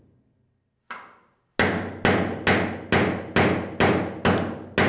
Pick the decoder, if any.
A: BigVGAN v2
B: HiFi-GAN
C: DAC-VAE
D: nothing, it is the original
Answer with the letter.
D